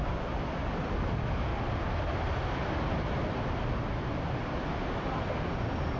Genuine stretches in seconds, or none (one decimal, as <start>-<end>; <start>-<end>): 0.0-6.0